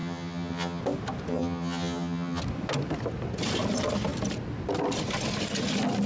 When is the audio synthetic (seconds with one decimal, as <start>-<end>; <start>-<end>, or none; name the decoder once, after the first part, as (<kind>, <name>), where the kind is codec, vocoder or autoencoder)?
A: 0.0-0.8 (vocoder, HiFi-GAN); 1.3-2.4